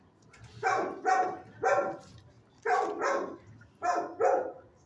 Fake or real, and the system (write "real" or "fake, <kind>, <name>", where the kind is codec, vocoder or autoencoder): real